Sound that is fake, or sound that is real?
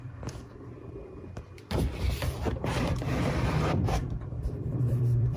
fake